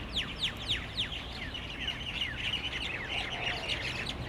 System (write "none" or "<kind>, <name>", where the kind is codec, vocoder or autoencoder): none